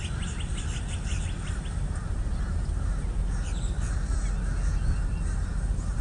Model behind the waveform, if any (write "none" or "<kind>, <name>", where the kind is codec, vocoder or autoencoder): none